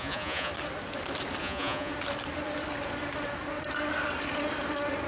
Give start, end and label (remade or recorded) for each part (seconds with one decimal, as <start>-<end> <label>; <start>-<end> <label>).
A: 0.0-0.5 remade; 0.5-1.4 recorded; 1.4-1.9 remade; 1.9-5.1 recorded